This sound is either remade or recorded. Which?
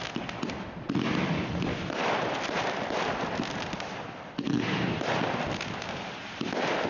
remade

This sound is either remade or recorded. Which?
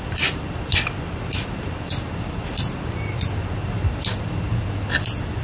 recorded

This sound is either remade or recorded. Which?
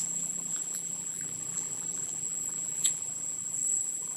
remade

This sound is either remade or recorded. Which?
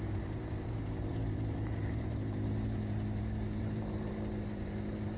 remade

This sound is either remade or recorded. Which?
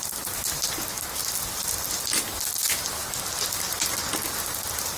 recorded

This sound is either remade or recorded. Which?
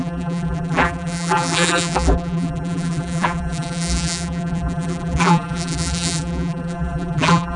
remade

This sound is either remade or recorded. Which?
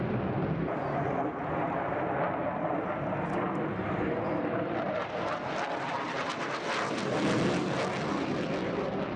recorded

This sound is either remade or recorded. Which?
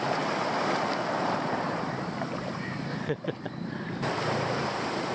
remade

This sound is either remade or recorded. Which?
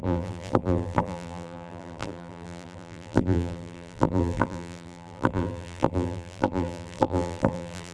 remade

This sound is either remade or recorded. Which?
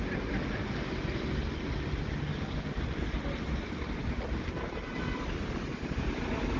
recorded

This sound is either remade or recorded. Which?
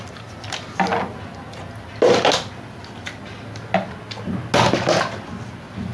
recorded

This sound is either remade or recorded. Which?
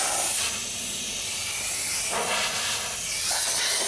remade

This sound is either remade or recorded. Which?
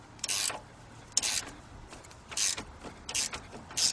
recorded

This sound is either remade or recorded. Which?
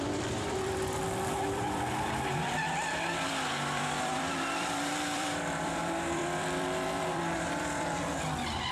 remade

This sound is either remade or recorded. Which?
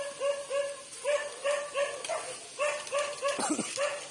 recorded